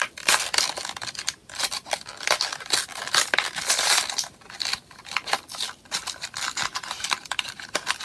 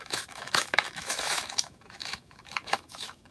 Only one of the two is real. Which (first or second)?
first